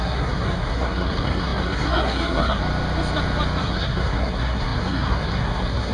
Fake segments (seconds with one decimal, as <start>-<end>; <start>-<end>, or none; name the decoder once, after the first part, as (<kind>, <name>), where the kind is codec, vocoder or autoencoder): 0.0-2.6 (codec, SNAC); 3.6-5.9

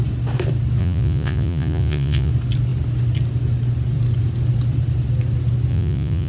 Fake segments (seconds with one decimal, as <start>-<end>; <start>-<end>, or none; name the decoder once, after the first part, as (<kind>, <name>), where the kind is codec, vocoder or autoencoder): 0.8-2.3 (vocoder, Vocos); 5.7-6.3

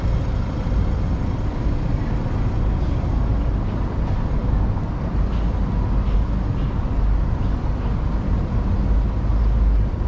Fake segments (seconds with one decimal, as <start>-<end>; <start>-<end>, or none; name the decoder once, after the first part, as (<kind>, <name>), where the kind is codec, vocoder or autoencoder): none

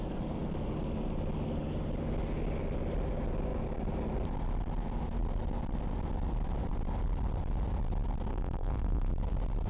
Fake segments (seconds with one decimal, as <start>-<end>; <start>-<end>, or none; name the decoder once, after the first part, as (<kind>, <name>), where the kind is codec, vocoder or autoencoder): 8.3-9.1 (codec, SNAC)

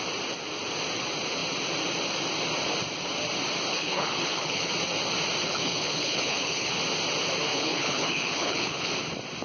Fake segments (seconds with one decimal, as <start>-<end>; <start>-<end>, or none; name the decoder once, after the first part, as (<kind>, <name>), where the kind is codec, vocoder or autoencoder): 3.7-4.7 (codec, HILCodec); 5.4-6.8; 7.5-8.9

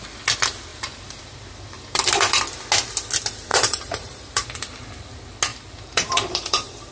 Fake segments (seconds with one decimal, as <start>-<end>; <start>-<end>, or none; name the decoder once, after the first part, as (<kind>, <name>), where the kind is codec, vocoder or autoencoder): 0.7-2.4 (vocoder, BigVGAN v2); 3.5-4.6; 5.5-6.9